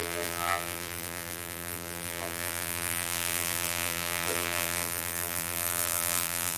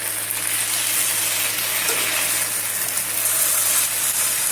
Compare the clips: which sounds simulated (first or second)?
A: first